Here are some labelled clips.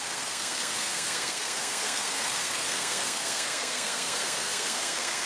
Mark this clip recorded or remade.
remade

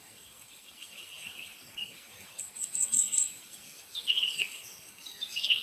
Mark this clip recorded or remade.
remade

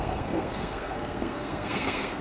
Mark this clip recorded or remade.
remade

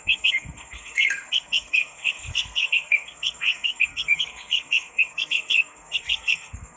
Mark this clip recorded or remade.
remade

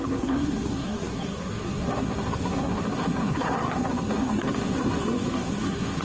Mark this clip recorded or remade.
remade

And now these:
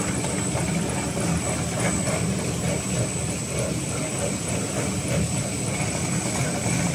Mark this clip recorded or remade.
recorded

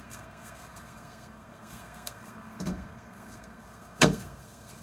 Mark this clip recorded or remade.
remade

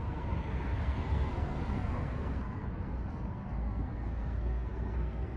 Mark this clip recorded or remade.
remade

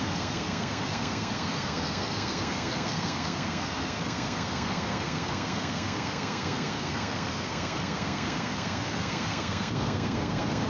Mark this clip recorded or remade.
remade